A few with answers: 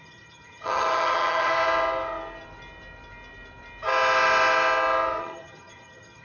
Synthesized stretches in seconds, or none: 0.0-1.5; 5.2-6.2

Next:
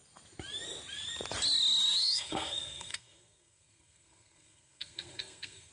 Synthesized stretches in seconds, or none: 2.0-5.7

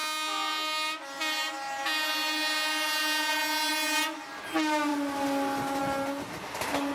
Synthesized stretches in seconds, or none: none

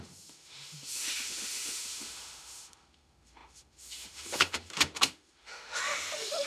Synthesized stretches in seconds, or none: 0.0-6.5

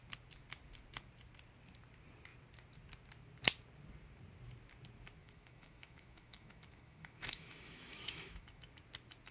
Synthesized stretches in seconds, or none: 5.2-8.6

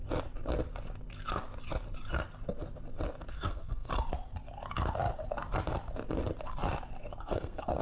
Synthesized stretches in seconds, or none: 3.3-3.9; 7.2-7.8

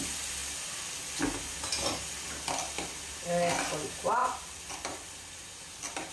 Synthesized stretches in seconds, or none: none